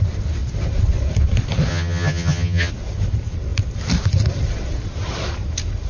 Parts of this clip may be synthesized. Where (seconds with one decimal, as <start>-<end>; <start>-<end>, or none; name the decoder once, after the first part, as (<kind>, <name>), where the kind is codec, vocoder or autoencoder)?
1.7-2.7 (vocoder, HiFi-GAN)